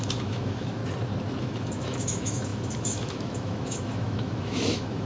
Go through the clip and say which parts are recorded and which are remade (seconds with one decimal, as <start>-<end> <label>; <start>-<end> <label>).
0.0-0.8 remade; 0.8-1.4 recorded; 1.4-5.0 remade